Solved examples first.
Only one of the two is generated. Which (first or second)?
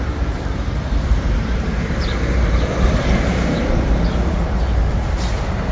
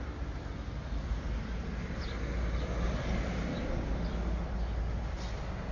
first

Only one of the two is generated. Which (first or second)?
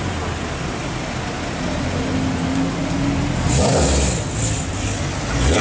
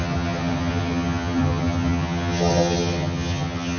second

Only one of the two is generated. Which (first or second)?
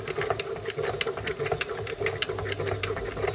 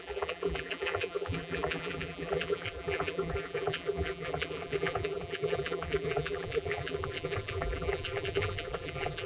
second